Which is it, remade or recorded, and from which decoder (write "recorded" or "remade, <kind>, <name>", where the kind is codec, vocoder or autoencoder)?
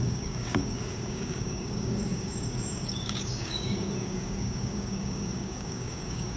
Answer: remade, codec, DAC